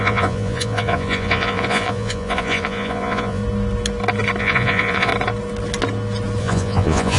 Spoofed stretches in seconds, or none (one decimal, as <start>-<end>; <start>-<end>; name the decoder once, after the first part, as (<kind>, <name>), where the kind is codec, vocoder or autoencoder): 0.0-3.4 (vocoder, Vocos); 4.4-5.1; 6.4-7.2